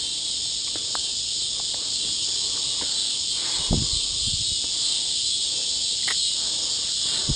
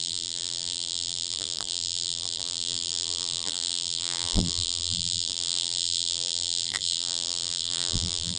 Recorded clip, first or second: first